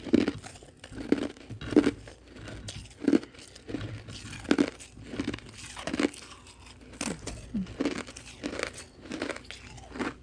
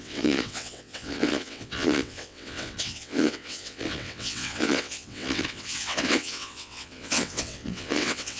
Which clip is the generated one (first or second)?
second